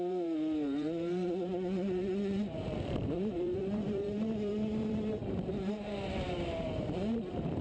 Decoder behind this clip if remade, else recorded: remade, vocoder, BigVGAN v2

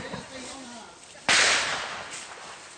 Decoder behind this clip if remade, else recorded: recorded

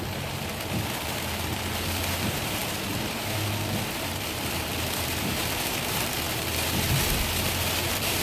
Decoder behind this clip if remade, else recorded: remade, vocoder, BigVGAN v2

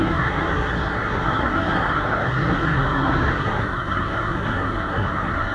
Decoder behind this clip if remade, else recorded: remade, codec, SNAC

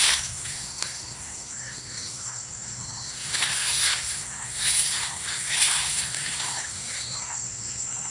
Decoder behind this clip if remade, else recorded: remade, codec, SNAC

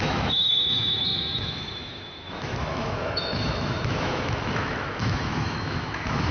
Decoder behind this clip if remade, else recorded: remade, autoencoder, DAC-VAE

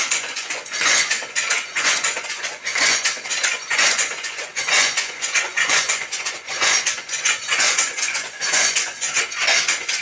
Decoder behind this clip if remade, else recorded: remade, vocoder, Vocos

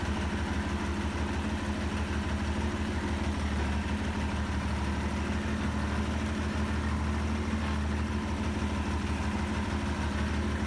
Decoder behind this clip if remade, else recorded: recorded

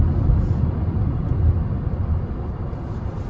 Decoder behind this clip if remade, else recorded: remade, vocoder, BigVGAN v2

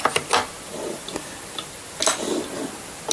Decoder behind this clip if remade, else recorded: recorded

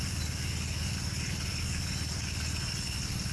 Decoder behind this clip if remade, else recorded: recorded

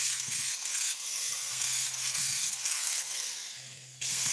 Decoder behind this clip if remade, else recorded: remade, codec, SNAC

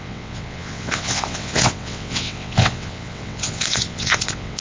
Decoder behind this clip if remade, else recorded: remade, vocoder, WaveNeXt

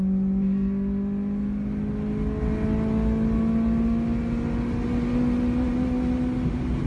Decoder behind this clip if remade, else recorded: recorded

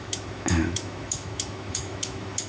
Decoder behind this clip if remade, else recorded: remade, autoencoder, DAC-VAE